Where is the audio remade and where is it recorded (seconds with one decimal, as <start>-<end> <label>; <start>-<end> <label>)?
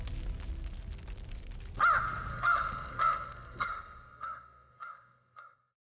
0.0-2.3 recorded; 2.3-5.8 remade